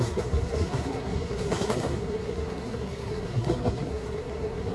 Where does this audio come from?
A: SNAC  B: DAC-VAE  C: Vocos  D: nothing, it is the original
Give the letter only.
A